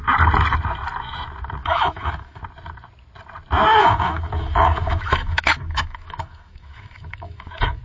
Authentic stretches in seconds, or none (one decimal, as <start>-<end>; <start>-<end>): 0.0-1.6; 2.4-3.8